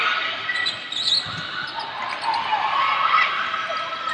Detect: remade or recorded recorded